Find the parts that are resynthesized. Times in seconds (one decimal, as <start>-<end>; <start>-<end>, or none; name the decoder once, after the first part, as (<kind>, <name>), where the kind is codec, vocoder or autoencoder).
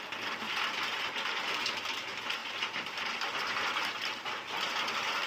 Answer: none